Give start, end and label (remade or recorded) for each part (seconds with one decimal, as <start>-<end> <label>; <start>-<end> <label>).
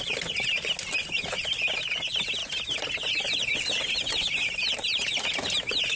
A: 0.0-6.0 recorded